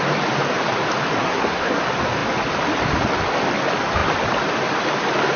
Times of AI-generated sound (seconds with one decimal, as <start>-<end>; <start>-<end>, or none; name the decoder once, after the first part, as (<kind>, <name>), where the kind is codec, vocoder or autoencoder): 1.2-1.8 (codec, SNAC)